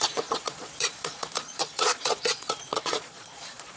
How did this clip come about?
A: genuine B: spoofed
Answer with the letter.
B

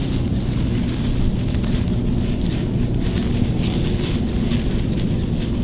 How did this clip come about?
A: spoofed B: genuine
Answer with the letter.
B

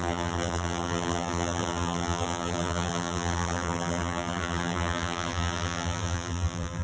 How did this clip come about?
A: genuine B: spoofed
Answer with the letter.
B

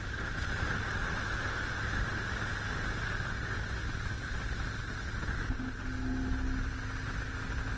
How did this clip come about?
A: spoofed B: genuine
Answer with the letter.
B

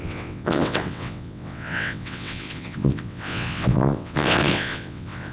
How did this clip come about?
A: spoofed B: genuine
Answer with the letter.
A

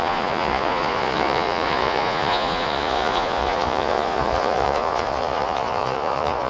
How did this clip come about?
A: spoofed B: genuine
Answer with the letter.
A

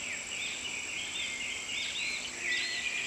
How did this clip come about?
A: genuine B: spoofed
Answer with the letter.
A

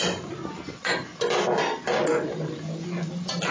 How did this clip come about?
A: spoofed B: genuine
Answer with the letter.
B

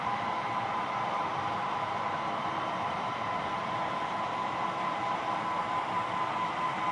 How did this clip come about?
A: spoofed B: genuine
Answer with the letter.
A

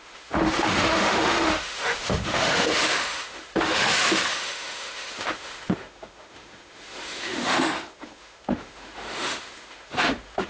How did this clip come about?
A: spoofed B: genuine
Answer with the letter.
A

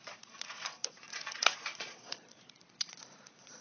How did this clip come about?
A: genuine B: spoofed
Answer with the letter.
B